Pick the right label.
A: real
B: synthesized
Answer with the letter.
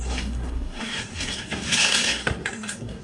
B